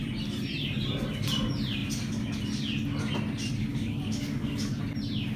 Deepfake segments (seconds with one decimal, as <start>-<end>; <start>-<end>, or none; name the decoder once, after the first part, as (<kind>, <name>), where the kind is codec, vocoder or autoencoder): 3.7-4.8 (codec, DAC)